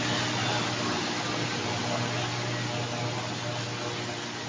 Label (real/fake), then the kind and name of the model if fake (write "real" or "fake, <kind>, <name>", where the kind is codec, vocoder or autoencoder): real